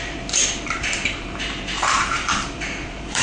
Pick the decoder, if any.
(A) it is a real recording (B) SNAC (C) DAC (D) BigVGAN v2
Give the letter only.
D